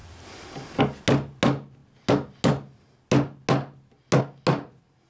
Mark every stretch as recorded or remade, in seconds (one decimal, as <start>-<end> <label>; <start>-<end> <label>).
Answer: 0.0-0.8 remade; 0.8-5.1 recorded